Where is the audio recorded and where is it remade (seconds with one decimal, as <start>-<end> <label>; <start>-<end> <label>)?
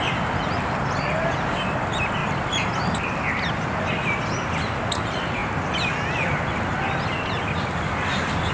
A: 0.0-8.5 recorded